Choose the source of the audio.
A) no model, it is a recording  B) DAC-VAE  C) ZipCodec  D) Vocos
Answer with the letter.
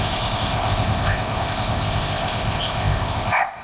C